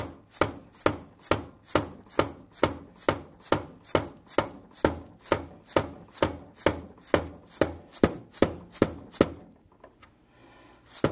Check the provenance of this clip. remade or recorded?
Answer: recorded